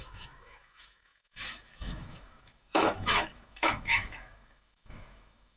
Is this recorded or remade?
remade